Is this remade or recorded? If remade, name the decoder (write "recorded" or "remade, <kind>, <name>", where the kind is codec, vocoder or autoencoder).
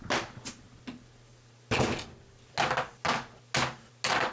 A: recorded